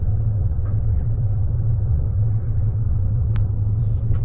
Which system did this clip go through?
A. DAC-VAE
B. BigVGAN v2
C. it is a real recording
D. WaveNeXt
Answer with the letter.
D